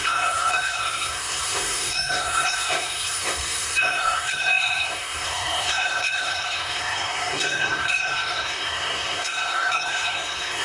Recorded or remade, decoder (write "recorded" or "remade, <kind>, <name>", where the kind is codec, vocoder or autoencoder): remade, codec, SNAC